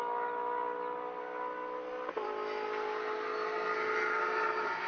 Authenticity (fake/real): real